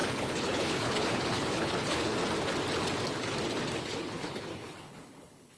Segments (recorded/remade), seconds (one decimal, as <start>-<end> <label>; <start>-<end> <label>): 0.0-2.2 remade; 2.2-3.8 recorded; 3.8-5.6 remade